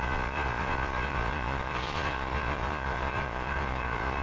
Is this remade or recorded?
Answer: remade